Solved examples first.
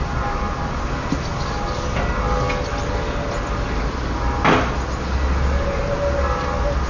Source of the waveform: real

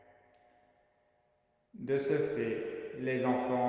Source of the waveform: real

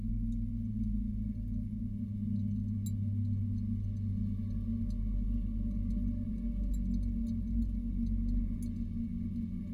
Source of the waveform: real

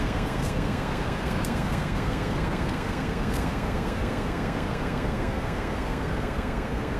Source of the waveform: fake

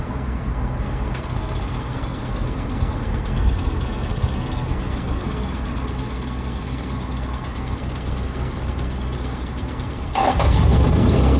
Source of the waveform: fake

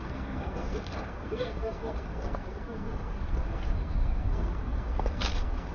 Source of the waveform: fake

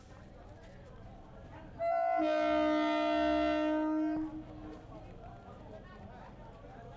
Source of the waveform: real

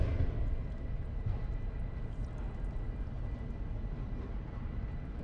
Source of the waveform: real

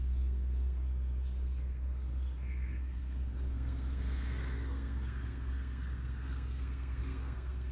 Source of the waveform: fake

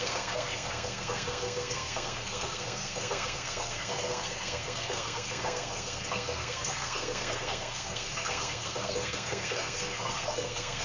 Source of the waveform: fake